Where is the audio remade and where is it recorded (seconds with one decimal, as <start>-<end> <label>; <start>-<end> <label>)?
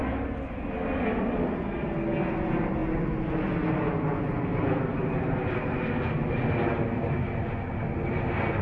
0.0-8.6 recorded